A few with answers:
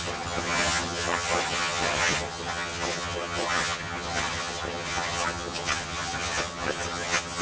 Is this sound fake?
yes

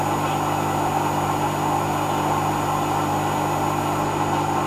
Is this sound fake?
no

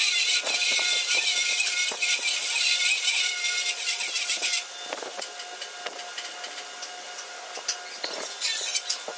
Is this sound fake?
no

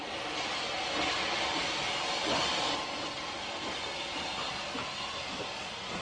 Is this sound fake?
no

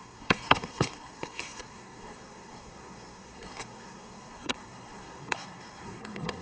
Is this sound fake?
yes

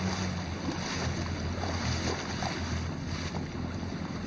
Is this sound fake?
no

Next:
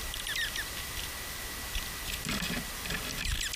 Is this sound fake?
no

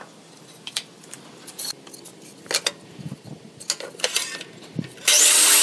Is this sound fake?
no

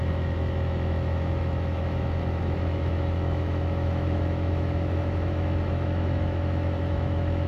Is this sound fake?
yes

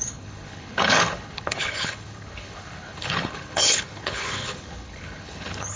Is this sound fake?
yes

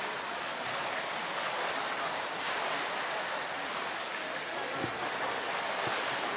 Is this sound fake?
no